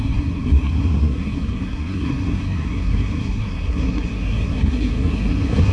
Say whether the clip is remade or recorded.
remade